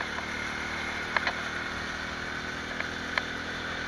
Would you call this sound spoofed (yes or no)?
no